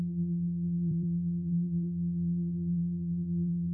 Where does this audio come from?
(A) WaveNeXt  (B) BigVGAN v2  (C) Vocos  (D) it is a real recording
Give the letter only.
B